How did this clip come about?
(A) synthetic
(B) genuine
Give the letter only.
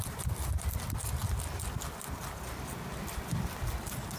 B